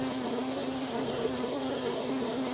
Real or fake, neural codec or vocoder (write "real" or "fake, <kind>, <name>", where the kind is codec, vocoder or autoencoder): fake, codec, SNAC